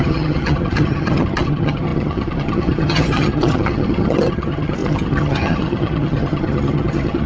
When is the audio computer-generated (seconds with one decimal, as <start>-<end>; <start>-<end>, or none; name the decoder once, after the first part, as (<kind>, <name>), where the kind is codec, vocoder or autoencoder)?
0.0-7.3 (vocoder, HiFi-GAN)